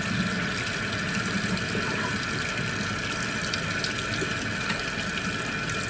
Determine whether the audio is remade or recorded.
recorded